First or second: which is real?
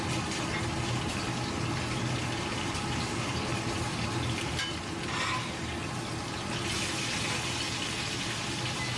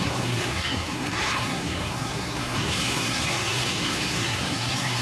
first